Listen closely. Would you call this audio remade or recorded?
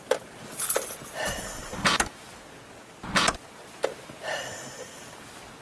recorded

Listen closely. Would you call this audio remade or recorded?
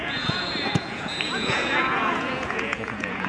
remade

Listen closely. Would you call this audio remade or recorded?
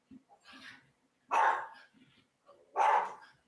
recorded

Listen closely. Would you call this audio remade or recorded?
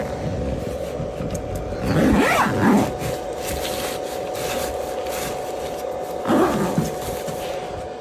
recorded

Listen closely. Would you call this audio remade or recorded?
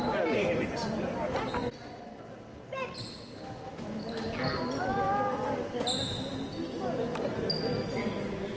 recorded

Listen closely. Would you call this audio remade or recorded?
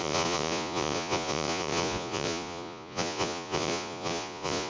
remade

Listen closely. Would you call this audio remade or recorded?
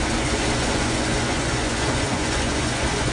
remade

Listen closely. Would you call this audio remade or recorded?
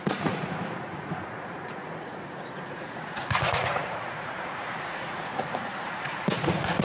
remade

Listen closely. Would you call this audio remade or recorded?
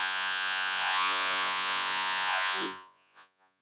remade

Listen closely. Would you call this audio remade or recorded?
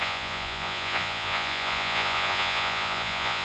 remade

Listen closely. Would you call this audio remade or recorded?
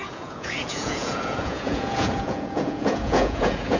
remade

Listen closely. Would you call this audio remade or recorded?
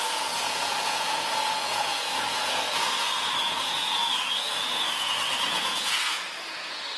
remade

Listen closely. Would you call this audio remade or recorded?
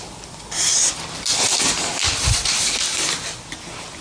recorded